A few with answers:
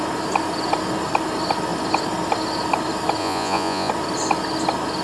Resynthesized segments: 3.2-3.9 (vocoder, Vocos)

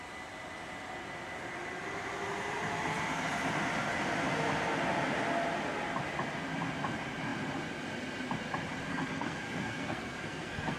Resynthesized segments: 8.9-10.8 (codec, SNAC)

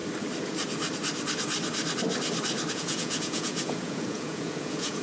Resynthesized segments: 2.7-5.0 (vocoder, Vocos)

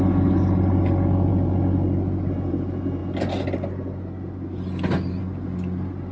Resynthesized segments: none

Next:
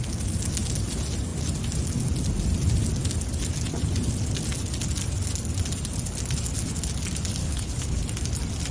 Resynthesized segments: 7.4-8.0 (codec, HILCodec)

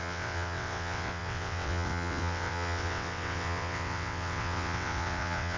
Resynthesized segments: 0.0-5.6 (vocoder, WaveNeXt)

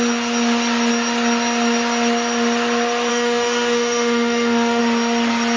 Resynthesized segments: 3.1-4.8 (autoencoder, DAC-VAE)

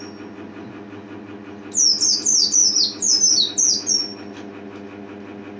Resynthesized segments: none